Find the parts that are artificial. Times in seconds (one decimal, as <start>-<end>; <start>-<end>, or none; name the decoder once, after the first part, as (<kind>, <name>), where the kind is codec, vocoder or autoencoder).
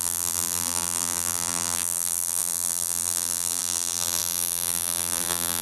0.0-5.6 (vocoder, BigVGAN v2)